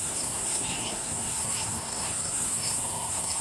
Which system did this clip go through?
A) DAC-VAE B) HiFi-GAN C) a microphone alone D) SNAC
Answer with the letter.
D